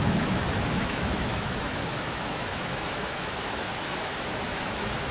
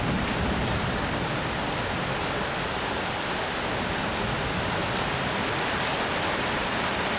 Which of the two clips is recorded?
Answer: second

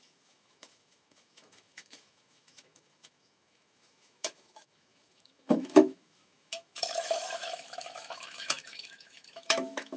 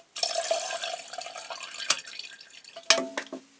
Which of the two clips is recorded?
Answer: second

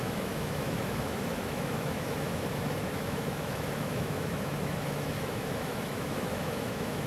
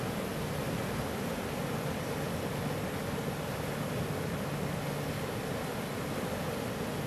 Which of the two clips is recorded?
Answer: second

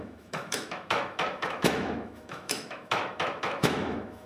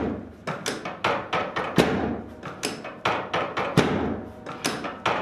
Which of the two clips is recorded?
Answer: second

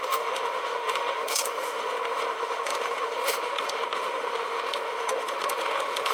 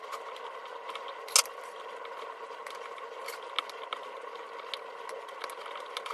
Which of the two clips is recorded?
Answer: second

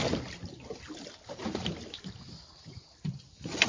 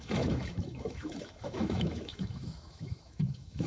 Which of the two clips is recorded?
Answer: first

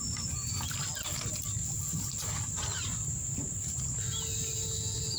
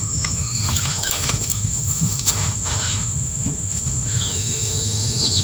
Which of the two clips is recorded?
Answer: first